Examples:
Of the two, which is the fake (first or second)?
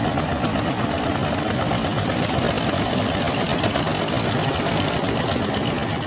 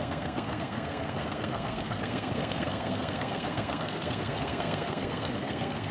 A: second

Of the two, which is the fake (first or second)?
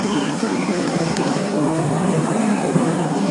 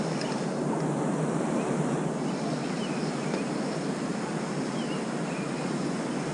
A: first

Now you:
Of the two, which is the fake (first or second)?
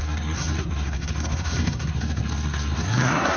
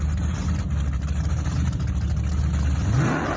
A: first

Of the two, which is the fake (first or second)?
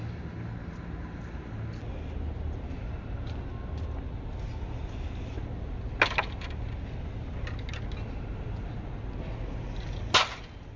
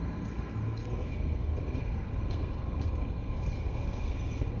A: second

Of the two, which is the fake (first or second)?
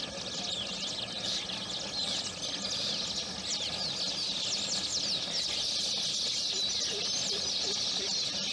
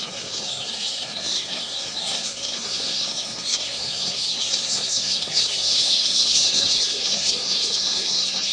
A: second